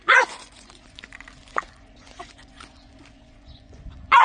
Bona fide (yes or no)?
no